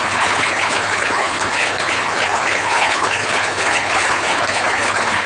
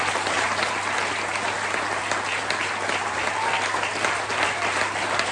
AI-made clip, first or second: first